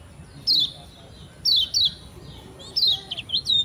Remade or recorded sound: recorded